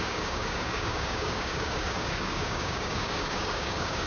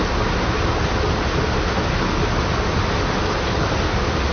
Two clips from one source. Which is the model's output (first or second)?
first